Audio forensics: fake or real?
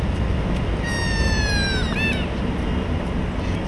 real